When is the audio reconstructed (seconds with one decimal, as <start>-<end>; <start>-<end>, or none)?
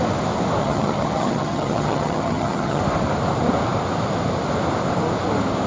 0.6-2.8